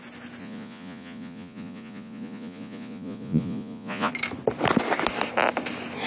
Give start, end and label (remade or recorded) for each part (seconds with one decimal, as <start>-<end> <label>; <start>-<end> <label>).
0.0-0.4 recorded; 0.4-4.1 remade; 4.1-6.1 recorded